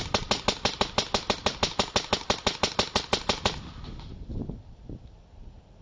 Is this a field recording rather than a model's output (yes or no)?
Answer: yes